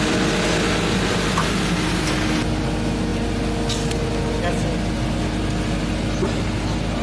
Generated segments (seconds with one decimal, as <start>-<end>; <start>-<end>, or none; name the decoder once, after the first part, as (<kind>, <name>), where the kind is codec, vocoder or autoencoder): none

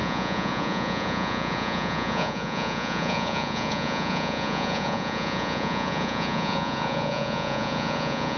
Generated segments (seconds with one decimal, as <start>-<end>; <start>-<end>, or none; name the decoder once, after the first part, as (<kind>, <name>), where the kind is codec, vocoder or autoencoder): 0.0-8.4 (vocoder, Vocos)

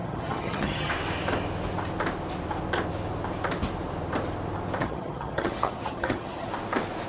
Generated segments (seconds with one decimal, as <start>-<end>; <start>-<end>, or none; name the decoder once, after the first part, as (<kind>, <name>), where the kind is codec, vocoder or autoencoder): 0.0-0.9 (vocoder, HiFi-GAN); 4.8-6.5

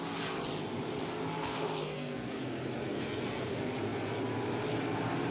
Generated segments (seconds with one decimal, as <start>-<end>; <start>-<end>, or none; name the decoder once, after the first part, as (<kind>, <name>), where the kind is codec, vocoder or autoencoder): 1.4-2.4 (codec, SNAC); 2.8-3.5

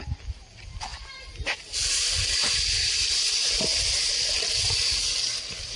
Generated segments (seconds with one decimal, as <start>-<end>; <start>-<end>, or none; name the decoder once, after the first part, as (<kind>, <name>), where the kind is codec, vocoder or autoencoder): none

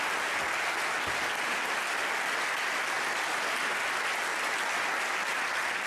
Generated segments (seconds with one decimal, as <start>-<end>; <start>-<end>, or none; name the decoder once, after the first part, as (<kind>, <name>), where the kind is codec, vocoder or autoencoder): none